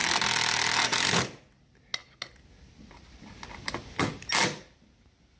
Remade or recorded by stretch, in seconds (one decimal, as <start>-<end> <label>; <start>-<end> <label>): 0.0-5.4 recorded